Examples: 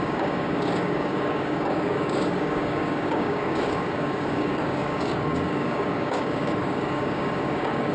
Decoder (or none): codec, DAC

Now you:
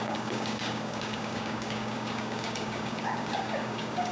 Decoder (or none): codec, DAC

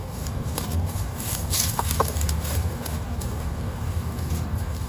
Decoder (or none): codec, DAC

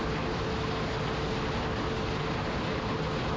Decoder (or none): none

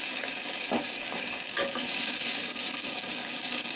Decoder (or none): codec, DAC